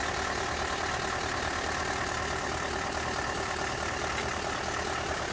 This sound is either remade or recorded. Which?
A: recorded